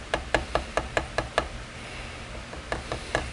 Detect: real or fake real